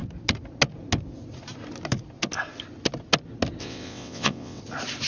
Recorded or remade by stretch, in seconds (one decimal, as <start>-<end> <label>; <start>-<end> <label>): 0.0-3.6 recorded; 3.6-4.6 remade; 4.6-5.1 recorded